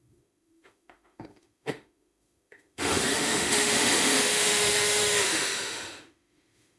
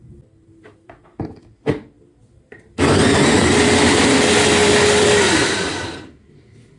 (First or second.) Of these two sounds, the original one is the second